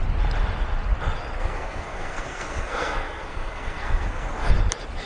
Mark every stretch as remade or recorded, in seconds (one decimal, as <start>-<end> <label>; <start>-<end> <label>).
0.0-1.4 recorded; 1.4-4.5 remade; 4.5-5.1 recorded